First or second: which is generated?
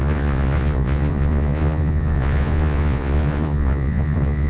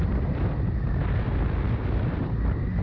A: first